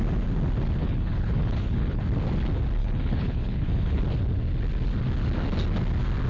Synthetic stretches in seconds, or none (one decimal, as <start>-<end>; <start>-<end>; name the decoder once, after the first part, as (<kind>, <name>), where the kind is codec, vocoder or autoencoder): 0.8-2.0 (codec, HILCodec); 2.8-4.0